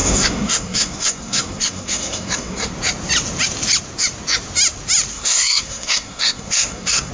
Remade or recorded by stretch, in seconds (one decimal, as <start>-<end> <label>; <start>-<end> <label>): 0.0-2.7 remade; 2.7-5.1 recorded; 5.1-7.1 remade